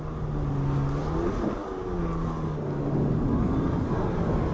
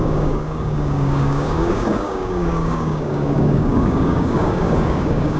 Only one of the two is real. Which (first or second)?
first